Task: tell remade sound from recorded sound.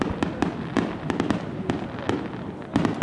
recorded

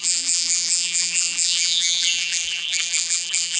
remade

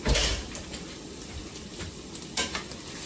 remade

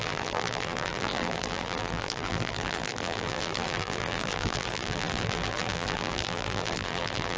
remade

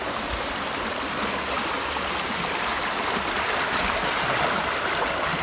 recorded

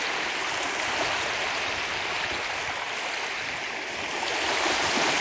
recorded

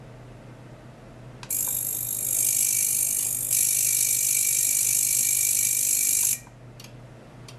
recorded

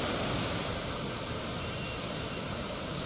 remade